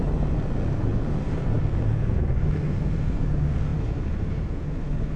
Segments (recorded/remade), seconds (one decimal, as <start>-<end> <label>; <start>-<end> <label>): 0.0-5.2 recorded